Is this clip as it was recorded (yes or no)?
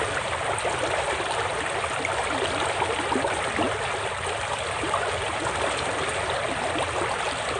yes